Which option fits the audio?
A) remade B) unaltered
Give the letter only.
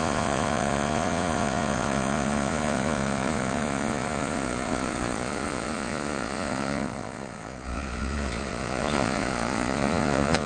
A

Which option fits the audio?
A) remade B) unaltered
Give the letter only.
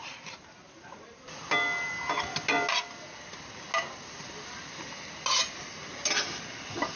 B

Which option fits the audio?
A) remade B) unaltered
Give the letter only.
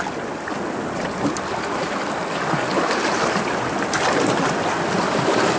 B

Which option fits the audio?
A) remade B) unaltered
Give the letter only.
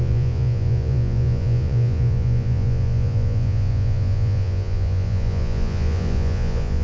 A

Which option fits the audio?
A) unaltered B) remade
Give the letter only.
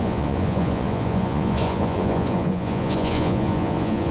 B